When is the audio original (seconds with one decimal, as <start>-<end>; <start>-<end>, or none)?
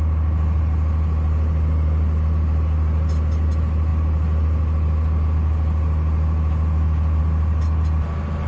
0.0-8.5